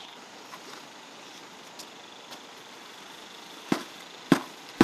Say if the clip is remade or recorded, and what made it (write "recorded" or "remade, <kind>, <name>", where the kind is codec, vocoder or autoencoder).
recorded